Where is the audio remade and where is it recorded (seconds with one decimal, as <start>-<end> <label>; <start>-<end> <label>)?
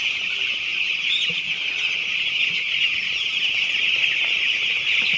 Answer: 0.0-0.7 remade; 0.7-3.8 recorded; 3.8-5.2 remade